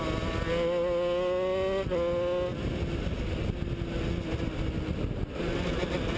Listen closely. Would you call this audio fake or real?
real